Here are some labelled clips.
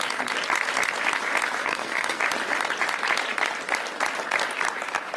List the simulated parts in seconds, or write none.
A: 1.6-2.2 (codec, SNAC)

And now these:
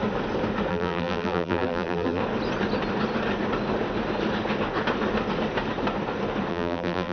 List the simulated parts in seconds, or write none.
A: 0.7-2.2 (vocoder, BigVGAN v2); 6.5-7.1

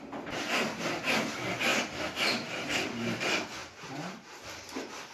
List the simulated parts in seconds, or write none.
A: 1.7-2.6 (vocoder, BigVGAN v2)